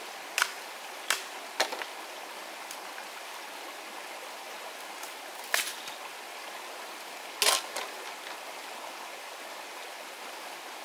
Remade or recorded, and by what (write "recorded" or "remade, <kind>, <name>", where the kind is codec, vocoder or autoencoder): recorded